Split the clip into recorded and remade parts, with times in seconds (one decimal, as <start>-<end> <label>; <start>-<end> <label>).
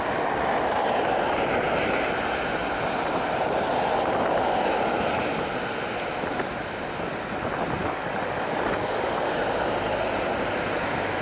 0.0-7.8 recorded; 7.8-9.3 remade; 9.3-11.2 recorded